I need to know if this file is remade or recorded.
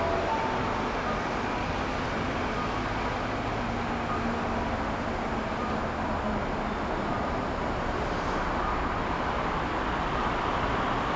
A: recorded